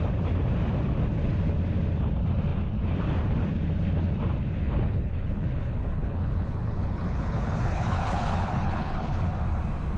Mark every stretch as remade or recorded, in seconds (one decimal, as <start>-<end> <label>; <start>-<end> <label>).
0.0-4.6 recorded; 4.6-9.3 remade; 9.3-10.0 recorded